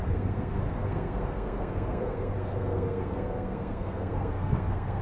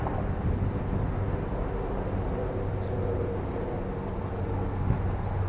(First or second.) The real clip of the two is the second